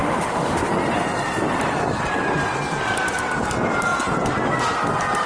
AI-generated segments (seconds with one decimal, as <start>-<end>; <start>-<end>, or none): 0.0-0.7

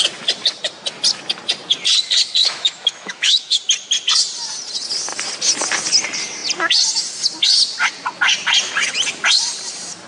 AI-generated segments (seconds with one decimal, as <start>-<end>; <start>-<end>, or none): 2.4-3.6

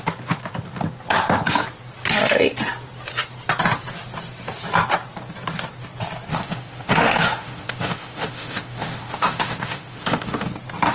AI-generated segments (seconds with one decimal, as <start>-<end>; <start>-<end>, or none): 6.3-10.5

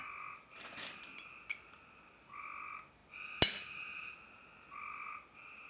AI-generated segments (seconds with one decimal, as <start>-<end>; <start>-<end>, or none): none

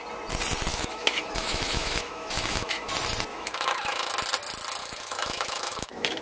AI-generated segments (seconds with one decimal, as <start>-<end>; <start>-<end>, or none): 0.7-2.9; 3.3-4.1; 4.8-6.2

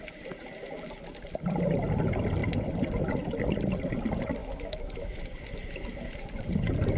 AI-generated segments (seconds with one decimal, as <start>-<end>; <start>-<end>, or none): 4.4-5.3

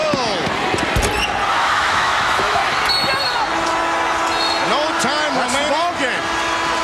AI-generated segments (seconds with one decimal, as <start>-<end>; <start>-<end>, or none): 1.6-2.6

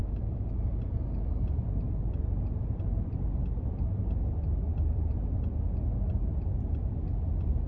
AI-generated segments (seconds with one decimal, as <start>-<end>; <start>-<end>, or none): 0.0-0.7